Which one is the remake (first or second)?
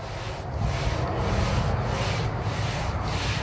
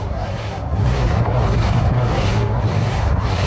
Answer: second